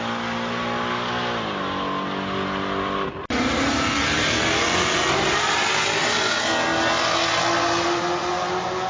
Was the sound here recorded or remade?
recorded